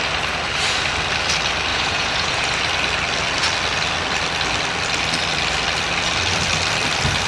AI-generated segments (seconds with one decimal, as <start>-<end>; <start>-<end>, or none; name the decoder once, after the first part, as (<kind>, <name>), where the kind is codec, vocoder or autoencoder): 1.7-2.6 (vocoder, Vocos)

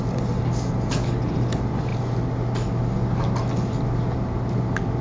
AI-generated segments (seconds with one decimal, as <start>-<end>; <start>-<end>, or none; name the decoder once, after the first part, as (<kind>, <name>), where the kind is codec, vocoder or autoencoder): none

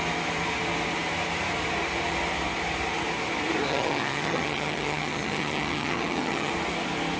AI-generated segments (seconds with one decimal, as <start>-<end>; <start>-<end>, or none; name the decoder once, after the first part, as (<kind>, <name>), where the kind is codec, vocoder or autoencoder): 3.7-6.5 (vocoder, HiFi-GAN)

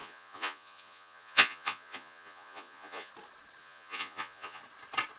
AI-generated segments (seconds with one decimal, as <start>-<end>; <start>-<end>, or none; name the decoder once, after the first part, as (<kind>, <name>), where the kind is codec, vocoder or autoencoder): 0.0-3.1 (vocoder, Vocos); 3.6-4.6

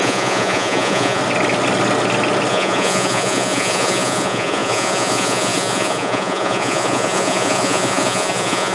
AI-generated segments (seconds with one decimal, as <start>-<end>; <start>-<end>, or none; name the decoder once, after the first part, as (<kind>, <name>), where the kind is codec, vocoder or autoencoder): 0.0-1.2 (vocoder, Vocos); 2.5-8.7

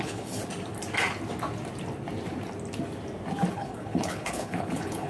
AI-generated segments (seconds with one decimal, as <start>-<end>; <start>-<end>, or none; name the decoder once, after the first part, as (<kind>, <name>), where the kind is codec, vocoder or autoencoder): 0.0-0.4 (codec, HILCodec); 3.5-5.1

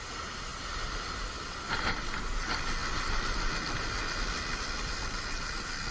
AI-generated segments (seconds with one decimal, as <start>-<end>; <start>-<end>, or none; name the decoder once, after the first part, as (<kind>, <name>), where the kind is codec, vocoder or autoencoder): none

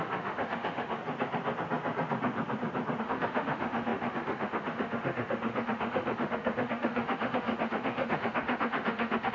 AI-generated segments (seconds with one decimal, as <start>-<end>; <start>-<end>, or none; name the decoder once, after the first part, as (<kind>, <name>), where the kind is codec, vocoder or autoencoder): 0.0-1.0 (autoencoder, DAC-VAE); 3.0-9.3